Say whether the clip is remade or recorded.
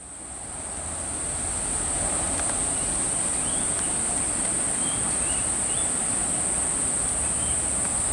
recorded